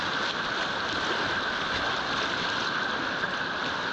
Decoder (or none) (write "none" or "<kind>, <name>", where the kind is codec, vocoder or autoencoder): none